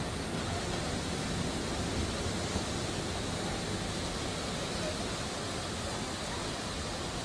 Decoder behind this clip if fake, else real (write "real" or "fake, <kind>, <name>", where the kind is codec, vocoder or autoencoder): real